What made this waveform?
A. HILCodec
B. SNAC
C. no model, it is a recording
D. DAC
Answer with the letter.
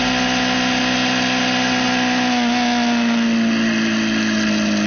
C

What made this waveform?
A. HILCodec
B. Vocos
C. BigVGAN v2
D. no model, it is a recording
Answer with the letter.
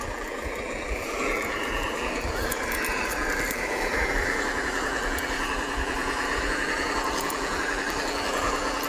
C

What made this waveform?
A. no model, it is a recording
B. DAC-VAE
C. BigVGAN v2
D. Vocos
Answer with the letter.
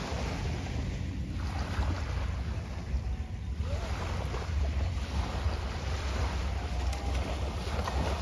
A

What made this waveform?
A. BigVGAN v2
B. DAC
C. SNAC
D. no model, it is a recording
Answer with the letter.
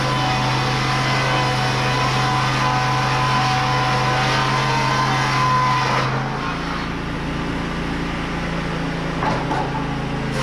D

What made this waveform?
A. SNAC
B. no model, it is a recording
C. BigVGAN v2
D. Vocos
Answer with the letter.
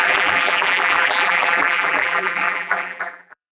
C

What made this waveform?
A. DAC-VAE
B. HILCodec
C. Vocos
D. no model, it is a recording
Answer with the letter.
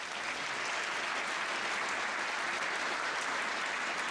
D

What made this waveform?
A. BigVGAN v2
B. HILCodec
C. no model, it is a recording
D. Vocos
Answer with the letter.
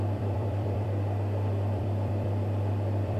A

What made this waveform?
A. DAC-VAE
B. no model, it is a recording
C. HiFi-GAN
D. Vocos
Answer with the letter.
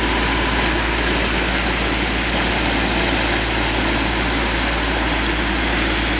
B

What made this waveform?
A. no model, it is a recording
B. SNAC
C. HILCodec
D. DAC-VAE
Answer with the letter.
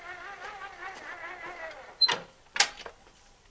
A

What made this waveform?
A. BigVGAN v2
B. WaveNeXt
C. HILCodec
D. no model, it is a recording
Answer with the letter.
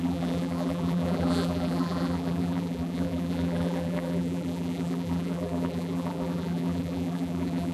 A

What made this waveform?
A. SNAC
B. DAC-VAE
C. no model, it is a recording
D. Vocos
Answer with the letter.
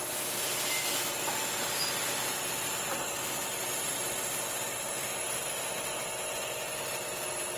C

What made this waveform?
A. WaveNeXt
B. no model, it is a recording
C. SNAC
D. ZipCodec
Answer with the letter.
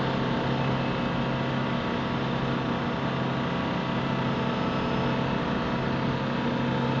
B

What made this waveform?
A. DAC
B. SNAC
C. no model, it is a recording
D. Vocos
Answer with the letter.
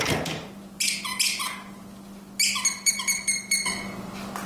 C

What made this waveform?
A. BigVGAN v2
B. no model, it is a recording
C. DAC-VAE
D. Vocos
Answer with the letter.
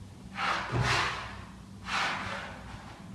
B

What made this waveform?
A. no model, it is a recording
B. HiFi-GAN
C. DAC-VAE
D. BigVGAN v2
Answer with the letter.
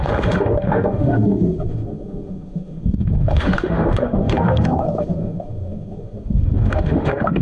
C